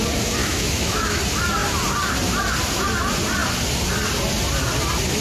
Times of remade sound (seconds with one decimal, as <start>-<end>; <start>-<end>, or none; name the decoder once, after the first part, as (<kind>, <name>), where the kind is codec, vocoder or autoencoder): 0.4-1.2 (autoencoder, DAC-VAE)